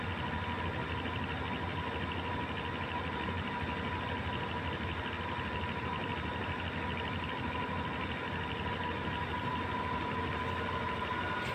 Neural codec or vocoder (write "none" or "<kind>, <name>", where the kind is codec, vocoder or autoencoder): none